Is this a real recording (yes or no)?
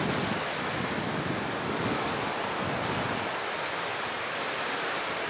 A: yes